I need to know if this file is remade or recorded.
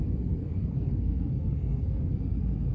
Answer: remade